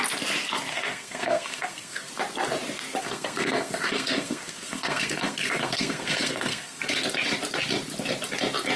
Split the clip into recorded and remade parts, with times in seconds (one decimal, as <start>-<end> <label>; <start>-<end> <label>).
0.0-0.7 recorded; 0.7-2.1 remade; 2.1-3.0 recorded; 3.0-6.8 remade; 6.8-8.8 recorded